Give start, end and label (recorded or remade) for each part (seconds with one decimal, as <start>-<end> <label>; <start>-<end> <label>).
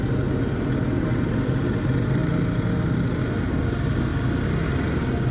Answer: 0.0-5.3 recorded